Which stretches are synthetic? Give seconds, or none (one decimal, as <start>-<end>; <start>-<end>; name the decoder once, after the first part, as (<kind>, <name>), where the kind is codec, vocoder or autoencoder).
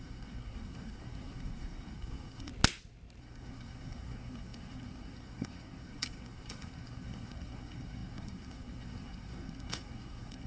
0.0-2.5 (codec, SNAC); 3.2-10.5